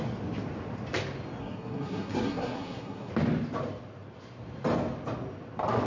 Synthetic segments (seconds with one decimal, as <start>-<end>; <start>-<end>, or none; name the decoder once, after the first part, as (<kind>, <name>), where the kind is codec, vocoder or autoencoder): 1.4-3.1 (codec, SNAC)